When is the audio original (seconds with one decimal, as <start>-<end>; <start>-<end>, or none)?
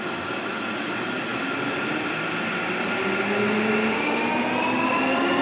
0.0-5.4